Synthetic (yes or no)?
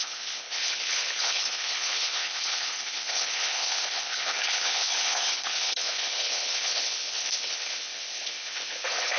yes